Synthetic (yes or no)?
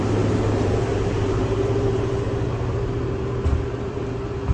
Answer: yes